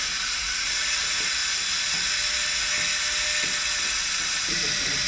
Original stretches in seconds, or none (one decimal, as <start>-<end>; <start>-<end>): 1.4-4.2